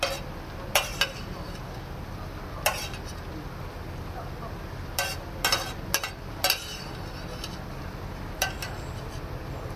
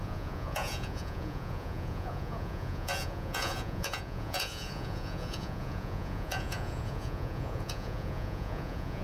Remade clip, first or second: second